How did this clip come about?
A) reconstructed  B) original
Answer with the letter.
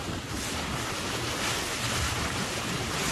B